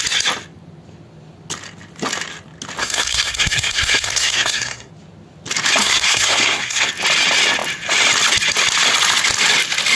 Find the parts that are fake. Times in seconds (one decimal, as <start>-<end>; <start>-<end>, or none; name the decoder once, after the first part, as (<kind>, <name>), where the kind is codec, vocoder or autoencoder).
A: 2.8-4.9 (codec, SNAC); 5.8-6.9